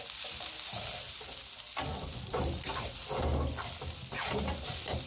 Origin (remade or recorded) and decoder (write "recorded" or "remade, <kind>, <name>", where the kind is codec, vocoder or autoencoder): recorded